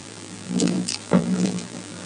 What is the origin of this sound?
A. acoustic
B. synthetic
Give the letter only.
B